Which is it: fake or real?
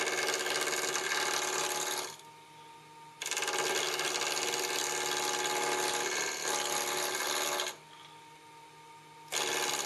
real